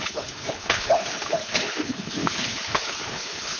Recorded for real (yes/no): no